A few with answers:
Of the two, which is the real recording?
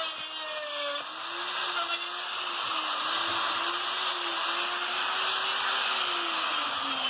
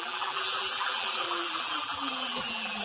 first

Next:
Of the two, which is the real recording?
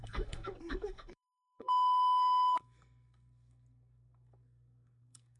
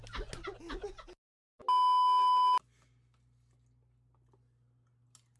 second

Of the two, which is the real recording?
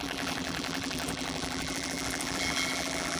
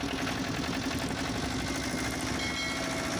second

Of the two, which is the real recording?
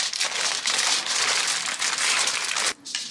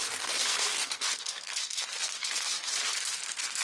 first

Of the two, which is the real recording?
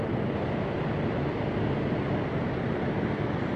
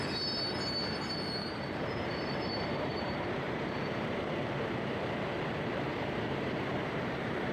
first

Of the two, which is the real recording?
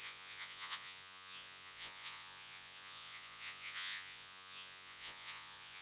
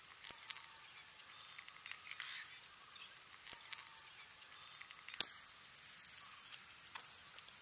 second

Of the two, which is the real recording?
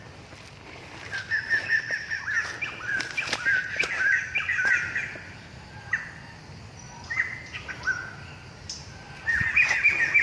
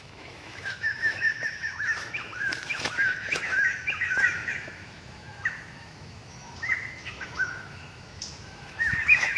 first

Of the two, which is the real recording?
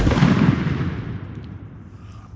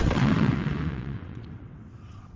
first